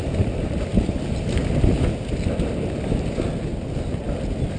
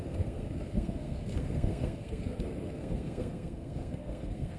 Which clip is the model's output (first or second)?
second